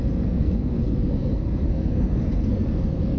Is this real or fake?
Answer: fake